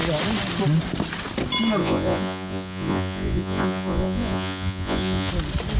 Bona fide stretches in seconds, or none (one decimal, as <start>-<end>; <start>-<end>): 0.0-1.8; 5.3-5.8